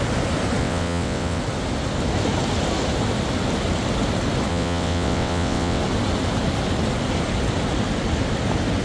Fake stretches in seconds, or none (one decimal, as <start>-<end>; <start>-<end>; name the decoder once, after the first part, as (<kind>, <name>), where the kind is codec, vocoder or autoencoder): 0.6-1.4 (vocoder, WaveNeXt); 4.5-5.8